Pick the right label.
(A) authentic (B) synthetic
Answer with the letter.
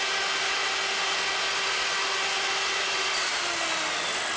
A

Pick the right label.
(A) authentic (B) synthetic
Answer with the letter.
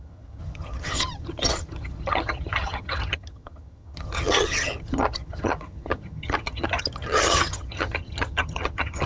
B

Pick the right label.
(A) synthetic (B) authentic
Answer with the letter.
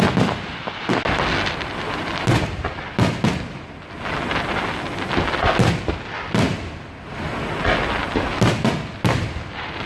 B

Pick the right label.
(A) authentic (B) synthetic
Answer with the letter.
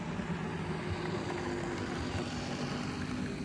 A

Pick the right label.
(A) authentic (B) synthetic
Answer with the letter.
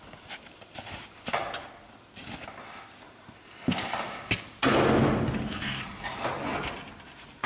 A